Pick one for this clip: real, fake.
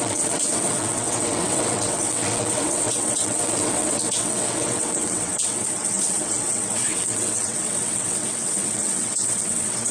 fake